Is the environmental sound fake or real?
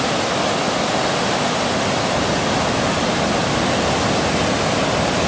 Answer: real